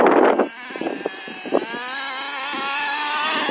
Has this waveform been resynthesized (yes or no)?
no